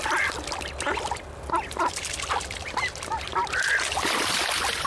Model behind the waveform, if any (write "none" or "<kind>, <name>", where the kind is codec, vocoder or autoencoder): none